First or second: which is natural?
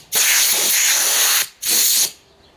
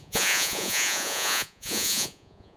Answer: first